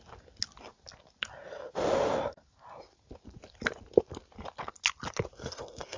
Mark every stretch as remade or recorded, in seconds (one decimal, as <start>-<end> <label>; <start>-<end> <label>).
0.0-5.3 recorded; 5.3-6.0 remade